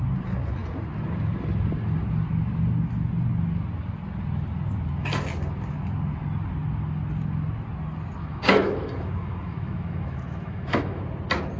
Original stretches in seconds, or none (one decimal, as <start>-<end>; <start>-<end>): 0.0-8.2; 11.0-11.6